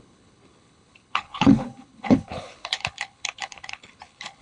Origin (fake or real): fake